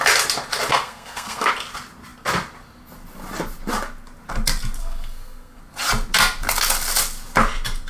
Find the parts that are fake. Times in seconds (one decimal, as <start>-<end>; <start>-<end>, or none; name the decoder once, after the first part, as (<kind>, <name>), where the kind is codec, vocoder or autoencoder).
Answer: 0.7-1.5 (codec, SNAC); 4.8-5.6